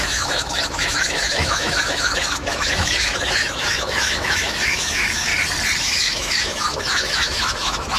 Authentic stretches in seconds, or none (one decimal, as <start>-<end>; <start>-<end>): 5.3-5.8